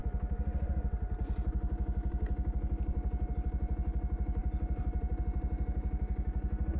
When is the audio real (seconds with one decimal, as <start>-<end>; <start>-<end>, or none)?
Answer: 0.0-4.4; 5.2-6.8